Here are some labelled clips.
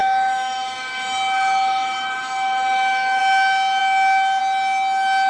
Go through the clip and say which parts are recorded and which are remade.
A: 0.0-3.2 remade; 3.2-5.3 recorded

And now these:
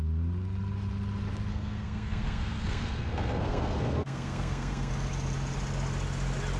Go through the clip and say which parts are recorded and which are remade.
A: 0.0-1.5 recorded; 1.5-4.9 remade; 4.9-6.6 recorded

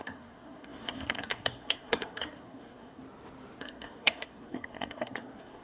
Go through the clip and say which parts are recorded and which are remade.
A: 0.0-3.0 remade; 3.0-3.6 recorded; 3.6-5.6 remade

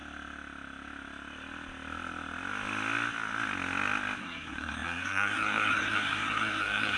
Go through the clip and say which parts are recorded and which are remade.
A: 0.0-4.2 recorded; 4.2-7.0 remade